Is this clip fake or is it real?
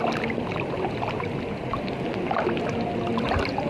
real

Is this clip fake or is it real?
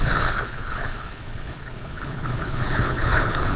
fake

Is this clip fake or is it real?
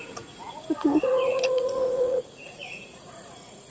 fake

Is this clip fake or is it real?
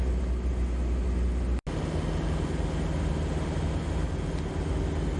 real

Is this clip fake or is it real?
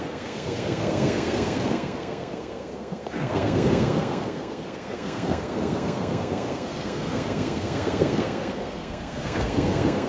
fake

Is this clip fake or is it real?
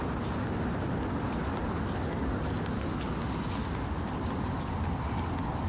real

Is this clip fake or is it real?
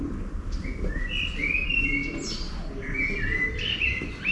fake